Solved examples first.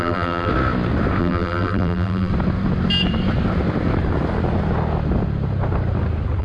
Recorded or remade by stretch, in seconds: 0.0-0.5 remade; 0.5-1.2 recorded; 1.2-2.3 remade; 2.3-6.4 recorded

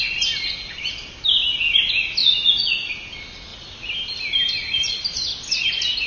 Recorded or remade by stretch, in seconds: 0.0-2.2 recorded; 2.2-2.9 remade; 2.9-6.1 recorded

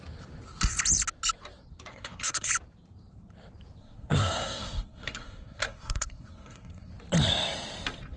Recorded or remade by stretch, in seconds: 0.0-1.9 recorded; 1.9-2.5 remade; 2.5-3.8 recorded; 3.8-6.9 remade; 6.9-8.2 recorded

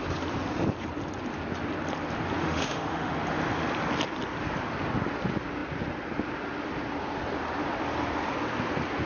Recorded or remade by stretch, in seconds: 0.0-2.4 recorded; 2.4-3.1 remade; 3.1-9.1 recorded

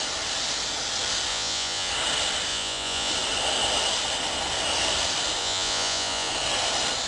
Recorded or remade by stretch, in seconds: 0.0-1.3 recorded; 1.3-1.9 remade; 1.9-2.5 recorded; 2.5-3.1 remade; 3.1-5.4 recorded; 5.4-6.3 remade; 6.3-7.1 recorded

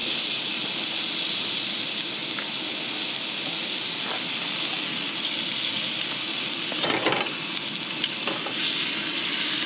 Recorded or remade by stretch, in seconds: 0.0-9.7 recorded

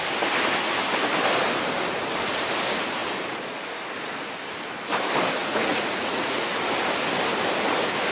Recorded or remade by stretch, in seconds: 0.0-5.4 recorded; 5.4-6.5 remade; 6.5-8.1 recorded